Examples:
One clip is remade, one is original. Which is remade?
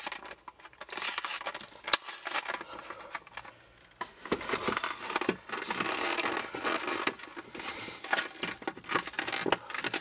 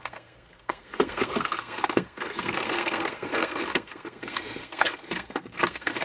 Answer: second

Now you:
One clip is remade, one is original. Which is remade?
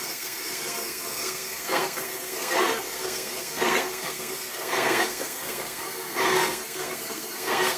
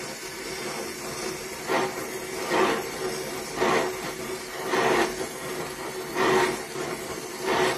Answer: first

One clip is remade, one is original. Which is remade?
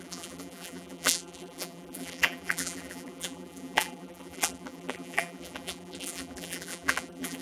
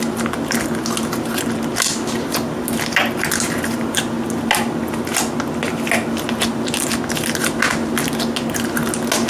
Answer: first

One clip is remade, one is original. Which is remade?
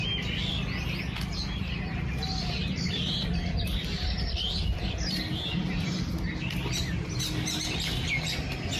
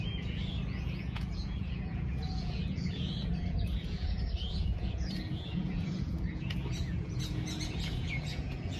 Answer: second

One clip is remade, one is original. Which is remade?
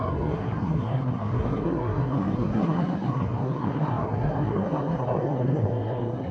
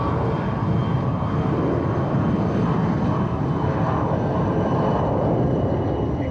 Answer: first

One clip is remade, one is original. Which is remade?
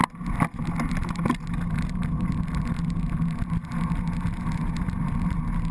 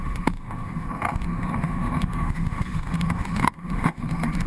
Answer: second